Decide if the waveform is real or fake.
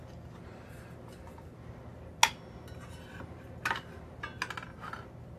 real